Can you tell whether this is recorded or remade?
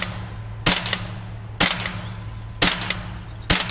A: recorded